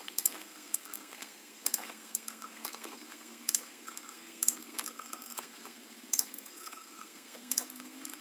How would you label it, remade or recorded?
remade